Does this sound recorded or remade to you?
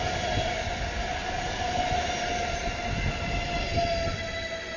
recorded